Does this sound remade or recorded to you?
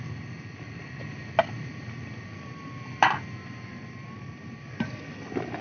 recorded